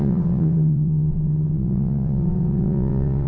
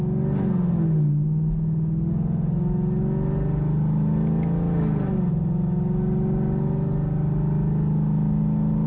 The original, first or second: second